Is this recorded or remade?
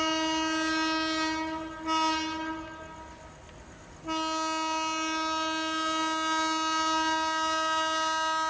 recorded